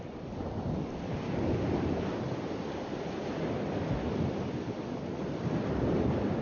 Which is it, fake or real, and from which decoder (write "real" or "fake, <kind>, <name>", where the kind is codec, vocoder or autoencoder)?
real